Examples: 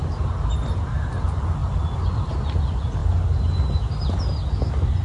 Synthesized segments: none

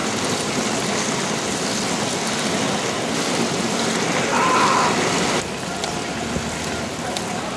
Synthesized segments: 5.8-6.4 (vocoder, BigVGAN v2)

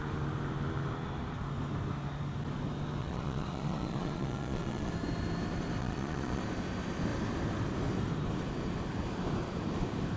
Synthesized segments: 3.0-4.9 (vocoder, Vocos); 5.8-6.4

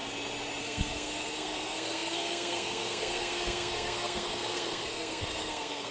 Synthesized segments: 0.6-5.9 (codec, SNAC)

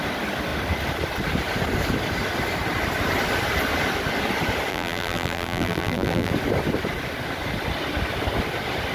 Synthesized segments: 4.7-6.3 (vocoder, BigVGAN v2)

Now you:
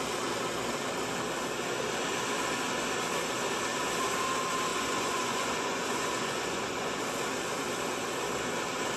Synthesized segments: 4.7-7.0 (vocoder, Vocos)